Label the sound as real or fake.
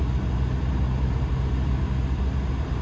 real